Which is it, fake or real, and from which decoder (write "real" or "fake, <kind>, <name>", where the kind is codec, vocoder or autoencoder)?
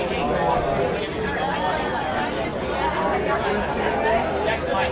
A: real